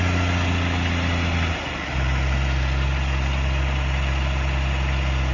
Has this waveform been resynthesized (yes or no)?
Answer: no